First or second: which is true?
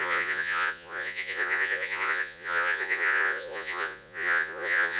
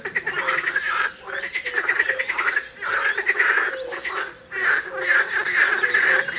second